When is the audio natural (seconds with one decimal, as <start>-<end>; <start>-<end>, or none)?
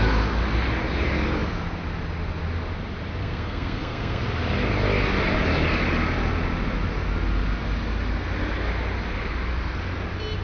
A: 0.0-3.2; 4.2-10.4